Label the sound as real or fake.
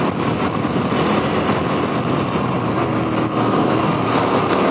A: real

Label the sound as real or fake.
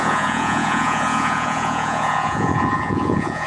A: fake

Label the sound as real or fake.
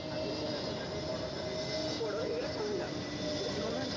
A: real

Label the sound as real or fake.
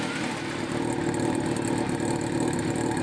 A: real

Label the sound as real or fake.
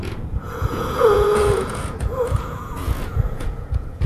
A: fake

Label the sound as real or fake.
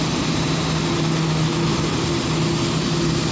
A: real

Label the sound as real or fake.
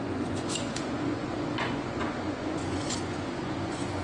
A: fake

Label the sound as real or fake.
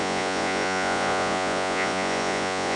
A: fake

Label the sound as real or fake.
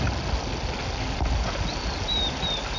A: real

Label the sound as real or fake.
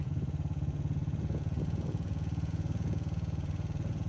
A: fake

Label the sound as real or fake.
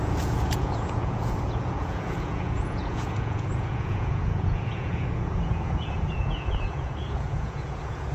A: fake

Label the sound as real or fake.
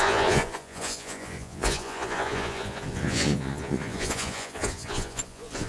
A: fake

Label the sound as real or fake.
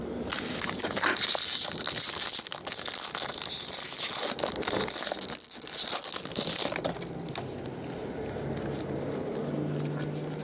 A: real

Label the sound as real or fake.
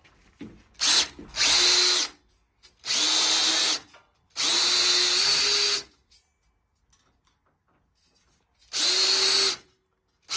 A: real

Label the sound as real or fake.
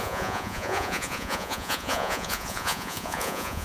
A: fake